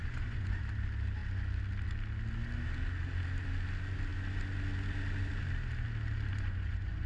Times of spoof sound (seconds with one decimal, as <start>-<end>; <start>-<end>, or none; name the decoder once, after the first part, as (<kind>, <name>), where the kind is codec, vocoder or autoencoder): 0.0-0.6 (vocoder, Vocos); 6.3-7.1